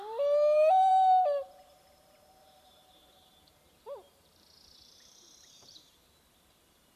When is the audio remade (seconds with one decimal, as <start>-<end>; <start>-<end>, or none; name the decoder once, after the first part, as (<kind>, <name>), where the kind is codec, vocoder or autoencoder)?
0.0-7.0 (vocoder, BigVGAN v2)

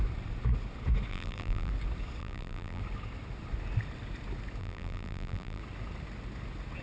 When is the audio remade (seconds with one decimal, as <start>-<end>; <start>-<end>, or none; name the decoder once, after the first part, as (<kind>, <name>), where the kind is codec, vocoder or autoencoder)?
1.1-1.7 (vocoder, BigVGAN v2); 2.2-2.8; 4.6-5.6

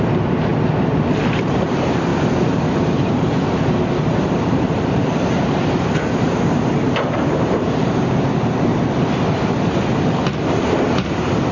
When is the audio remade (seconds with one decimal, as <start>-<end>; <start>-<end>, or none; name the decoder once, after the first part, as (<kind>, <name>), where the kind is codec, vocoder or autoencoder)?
0.0-0.5 (vocoder, BigVGAN v2); 1.2-2.1; 4.3-8.7; 10.6-11.5

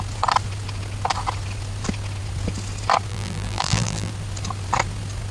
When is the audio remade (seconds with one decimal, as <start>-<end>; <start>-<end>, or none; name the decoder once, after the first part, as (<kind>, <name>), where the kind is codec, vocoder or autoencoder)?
3.1-4.1 (vocoder, BigVGAN v2)

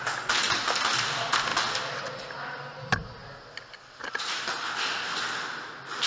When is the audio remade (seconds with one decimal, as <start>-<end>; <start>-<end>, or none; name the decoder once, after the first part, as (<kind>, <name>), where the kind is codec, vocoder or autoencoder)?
none

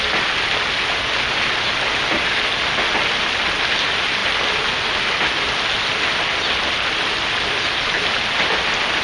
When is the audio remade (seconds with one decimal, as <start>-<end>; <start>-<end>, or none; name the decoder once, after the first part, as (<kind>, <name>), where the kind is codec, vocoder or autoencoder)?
none